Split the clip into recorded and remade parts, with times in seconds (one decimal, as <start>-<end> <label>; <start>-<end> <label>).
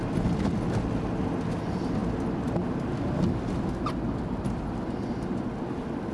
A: 0.0-6.1 recorded